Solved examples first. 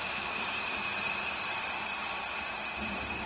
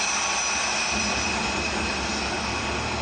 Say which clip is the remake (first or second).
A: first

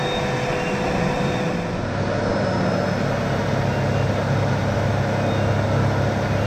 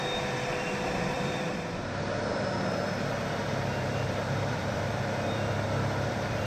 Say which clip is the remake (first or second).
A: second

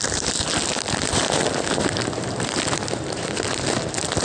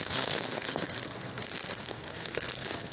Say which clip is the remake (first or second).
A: second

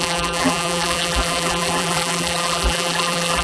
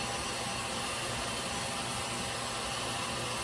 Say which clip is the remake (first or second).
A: first